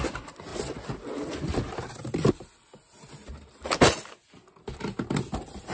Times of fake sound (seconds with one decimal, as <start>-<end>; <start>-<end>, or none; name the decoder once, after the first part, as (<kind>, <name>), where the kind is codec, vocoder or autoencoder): none